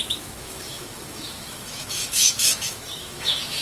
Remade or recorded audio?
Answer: remade